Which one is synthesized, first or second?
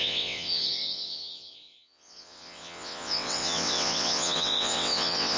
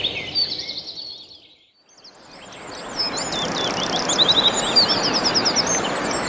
first